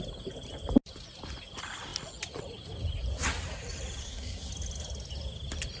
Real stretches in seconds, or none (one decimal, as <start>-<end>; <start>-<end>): 0.0-4.0; 4.5-5.8